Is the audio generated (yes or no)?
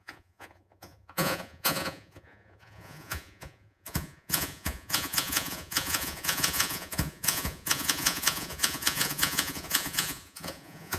yes